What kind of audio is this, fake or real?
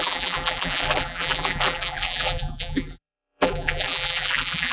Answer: fake